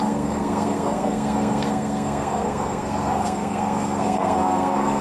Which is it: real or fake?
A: fake